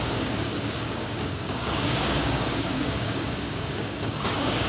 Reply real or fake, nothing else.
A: fake